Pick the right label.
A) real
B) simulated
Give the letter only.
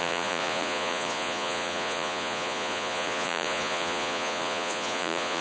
B